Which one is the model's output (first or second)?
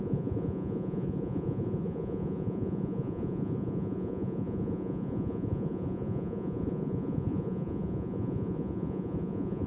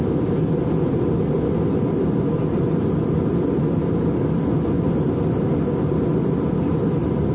first